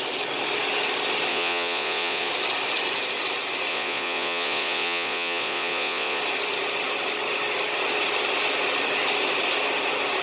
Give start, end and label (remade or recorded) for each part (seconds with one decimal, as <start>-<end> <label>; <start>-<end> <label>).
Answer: 0.0-1.3 recorded; 1.3-2.3 remade; 2.3-3.7 recorded; 3.7-6.2 remade; 6.2-10.2 recorded